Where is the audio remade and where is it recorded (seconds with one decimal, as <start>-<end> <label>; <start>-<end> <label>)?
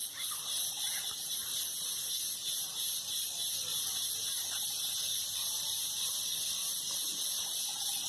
0.0-3.7 recorded; 3.7-6.5 remade; 6.5-8.1 recorded